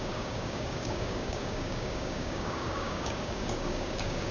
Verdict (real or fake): fake